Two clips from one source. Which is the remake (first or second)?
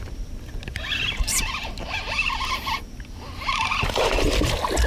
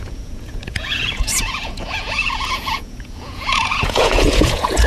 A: second